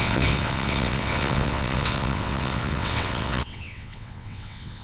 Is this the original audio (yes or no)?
no